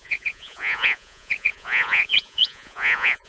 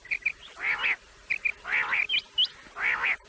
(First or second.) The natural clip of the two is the second